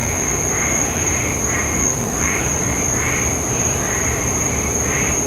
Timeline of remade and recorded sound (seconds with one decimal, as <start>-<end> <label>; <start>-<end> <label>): 0.0-1.0 remade; 1.0-1.8 recorded; 1.8-2.4 remade; 2.4-5.3 recorded